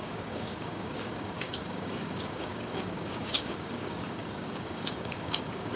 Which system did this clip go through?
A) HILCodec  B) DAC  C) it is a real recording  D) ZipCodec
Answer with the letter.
B